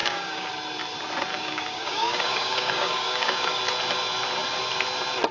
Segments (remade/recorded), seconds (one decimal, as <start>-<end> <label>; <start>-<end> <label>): 0.0-0.5 remade; 0.5-1.3 recorded; 1.3-3.6 remade; 3.6-5.3 recorded